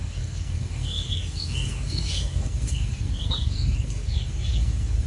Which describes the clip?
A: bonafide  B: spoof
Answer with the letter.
B